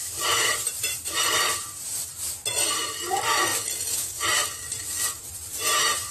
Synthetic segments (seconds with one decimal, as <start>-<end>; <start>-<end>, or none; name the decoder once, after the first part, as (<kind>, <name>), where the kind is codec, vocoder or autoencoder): 0.0-3.5 (vocoder, BigVGAN v2); 5.6-6.1